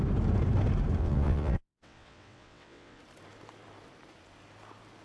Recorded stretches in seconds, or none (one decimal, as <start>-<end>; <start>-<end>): 0.0-1.0; 3.0-5.0